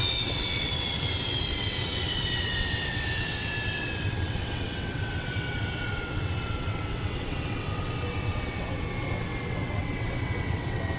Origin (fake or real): fake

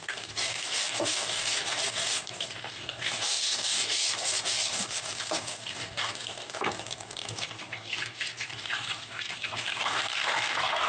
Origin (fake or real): fake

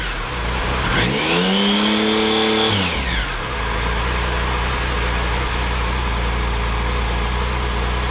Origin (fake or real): real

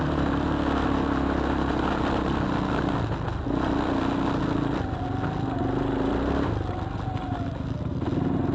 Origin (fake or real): real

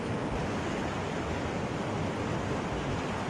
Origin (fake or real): real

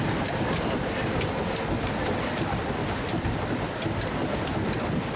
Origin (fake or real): real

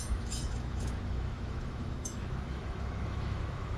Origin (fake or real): fake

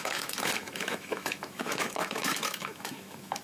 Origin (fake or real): fake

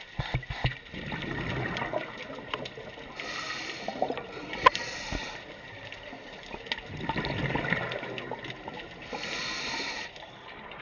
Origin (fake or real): real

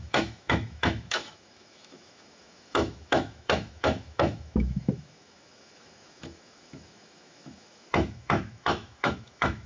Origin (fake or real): fake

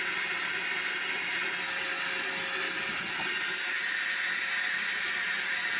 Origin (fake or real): real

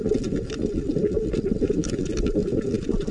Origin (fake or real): real